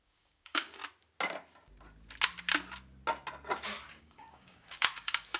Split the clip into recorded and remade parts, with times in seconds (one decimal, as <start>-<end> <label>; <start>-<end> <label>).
0.0-0.8 remade; 0.8-4.0 recorded; 4.0-5.4 remade